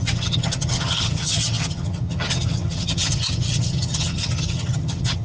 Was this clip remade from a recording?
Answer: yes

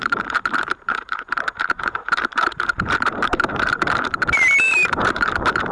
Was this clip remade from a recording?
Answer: yes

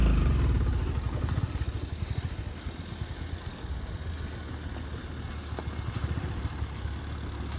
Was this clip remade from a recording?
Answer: no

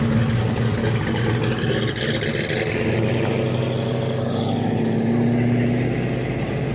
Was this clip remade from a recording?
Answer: no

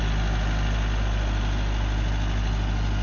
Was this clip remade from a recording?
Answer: no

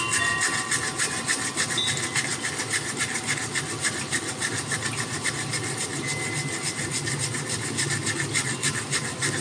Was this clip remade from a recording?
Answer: no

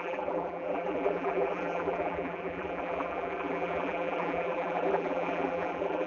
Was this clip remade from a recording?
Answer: yes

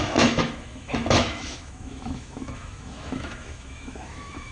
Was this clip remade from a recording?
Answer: yes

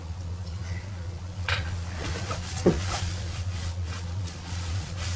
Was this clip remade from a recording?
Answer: yes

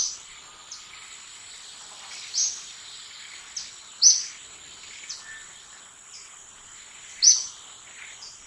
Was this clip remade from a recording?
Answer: no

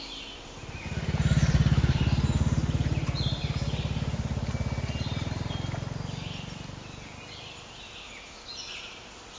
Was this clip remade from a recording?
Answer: no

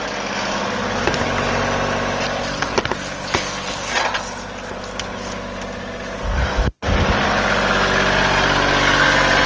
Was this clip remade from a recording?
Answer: no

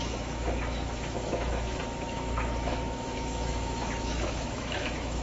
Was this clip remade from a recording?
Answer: yes